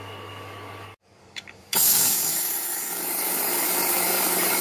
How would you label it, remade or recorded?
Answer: remade